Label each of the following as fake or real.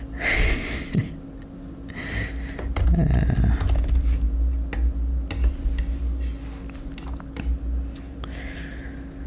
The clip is real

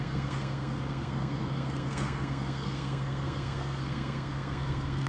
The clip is fake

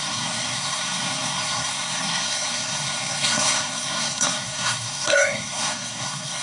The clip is fake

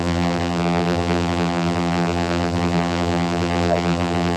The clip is fake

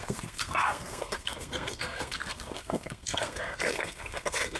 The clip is fake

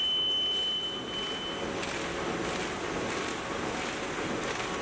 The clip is real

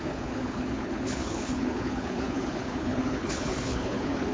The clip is fake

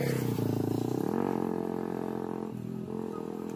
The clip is real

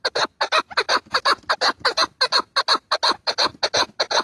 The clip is real